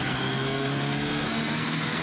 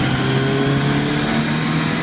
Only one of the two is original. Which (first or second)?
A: second